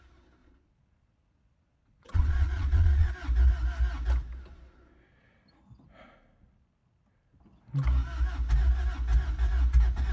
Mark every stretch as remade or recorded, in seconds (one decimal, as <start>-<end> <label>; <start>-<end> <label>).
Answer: 0.0-0.4 recorded; 0.4-3.1 remade; 3.1-10.1 recorded